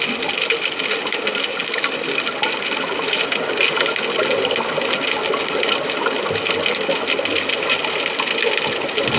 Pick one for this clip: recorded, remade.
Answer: recorded